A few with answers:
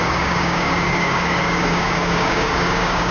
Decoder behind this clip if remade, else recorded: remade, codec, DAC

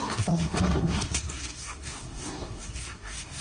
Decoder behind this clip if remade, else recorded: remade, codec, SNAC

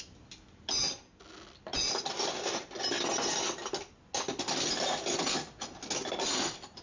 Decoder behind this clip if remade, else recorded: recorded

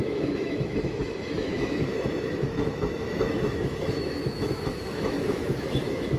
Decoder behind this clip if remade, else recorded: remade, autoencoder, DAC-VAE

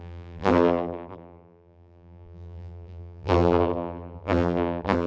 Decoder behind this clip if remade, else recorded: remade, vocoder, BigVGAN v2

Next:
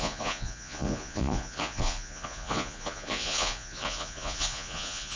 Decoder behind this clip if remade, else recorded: remade, vocoder, Vocos